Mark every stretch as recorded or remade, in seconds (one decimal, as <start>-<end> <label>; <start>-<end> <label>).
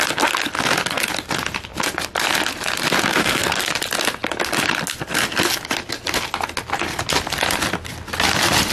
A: 0.0-3.2 recorded; 3.2-3.7 remade; 3.7-8.7 recorded